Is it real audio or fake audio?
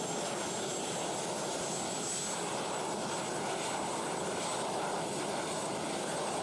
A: real